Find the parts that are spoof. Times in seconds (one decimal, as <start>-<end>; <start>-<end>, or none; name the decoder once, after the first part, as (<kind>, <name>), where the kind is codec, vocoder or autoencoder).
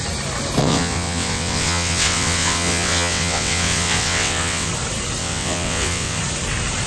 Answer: 0.6-4.7 (vocoder, WaveNeXt); 5.2-6.2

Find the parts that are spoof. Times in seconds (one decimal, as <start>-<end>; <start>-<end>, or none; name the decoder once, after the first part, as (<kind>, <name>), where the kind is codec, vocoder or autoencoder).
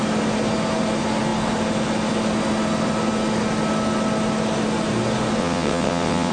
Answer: 5.4-6.3 (vocoder, WaveNeXt)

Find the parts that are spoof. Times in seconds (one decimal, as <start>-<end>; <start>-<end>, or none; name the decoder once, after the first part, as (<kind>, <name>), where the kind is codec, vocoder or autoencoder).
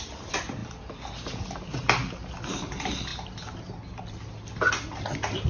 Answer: none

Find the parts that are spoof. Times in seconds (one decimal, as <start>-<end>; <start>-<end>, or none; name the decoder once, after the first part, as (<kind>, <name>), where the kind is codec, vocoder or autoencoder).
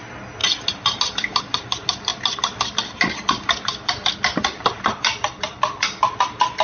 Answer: none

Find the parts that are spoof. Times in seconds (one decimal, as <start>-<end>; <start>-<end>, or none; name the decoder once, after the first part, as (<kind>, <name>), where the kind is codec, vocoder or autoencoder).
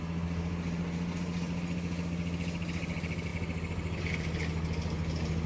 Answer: none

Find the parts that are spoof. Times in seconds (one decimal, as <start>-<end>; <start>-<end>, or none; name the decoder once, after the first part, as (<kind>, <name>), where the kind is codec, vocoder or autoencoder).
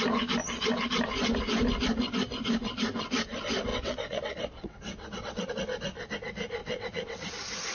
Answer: 3.7-5.5 (vocoder, WaveNeXt); 6.6-7.3